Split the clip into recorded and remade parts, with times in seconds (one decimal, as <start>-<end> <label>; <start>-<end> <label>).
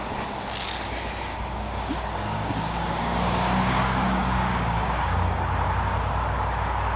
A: 0.0-1.3 recorded; 1.3-5.5 remade; 5.5-7.0 recorded